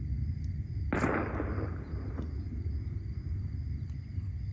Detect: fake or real real